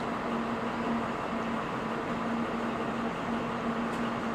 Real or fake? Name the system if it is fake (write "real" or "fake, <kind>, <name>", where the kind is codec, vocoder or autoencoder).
real